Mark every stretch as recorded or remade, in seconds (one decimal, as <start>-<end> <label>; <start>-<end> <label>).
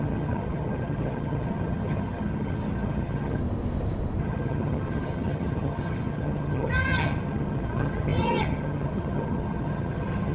0.0-3.4 remade; 3.4-4.2 recorded; 4.2-10.3 remade